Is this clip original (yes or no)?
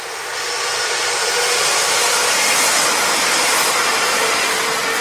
yes